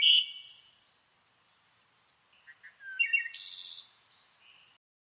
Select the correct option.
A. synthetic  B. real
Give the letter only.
B